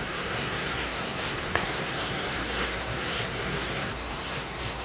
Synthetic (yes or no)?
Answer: yes